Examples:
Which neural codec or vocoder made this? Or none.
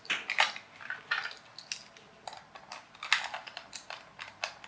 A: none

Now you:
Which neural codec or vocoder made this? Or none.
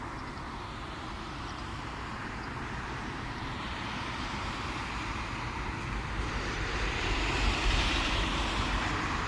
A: vocoder, BigVGAN v2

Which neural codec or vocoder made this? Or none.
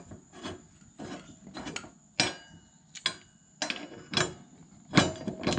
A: none